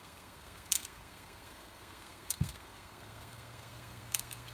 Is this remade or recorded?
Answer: remade